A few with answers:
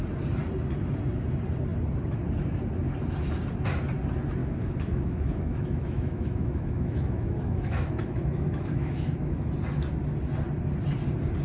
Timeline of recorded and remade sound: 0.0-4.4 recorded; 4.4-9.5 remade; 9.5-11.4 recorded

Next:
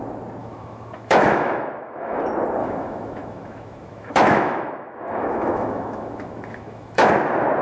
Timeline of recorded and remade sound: 0.0-0.4 recorded; 0.4-2.2 remade; 2.2-2.6 recorded; 2.6-7.1 remade; 7.1-7.6 recorded

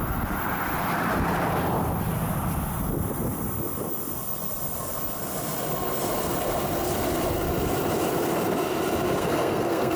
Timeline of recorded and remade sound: 0.0-9.2 recorded; 9.2-10.0 remade

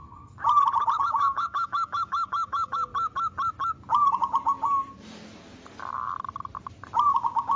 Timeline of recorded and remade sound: 0.0-1.0 recorded; 1.0-2.9 remade; 2.9-7.1 recorded; 7.1-7.6 remade

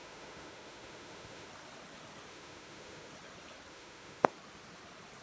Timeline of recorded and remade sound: 0.0-1.5 remade; 1.5-2.3 recorded; 2.3-3.1 remade; 3.1-3.7 recorded; 3.7-4.3 remade; 4.3-5.2 recorded